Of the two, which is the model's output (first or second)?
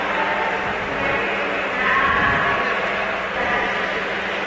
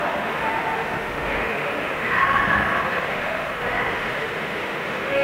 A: second